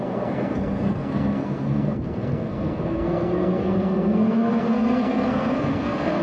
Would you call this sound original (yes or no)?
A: no